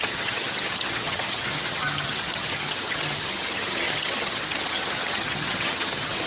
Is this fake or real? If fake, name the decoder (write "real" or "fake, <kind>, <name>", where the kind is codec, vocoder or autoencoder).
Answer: fake, vocoder, HiFi-GAN